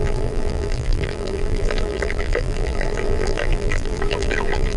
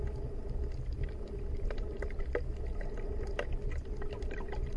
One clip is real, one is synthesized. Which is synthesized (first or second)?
first